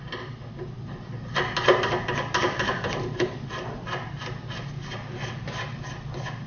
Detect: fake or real real